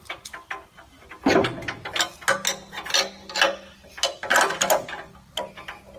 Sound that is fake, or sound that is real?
real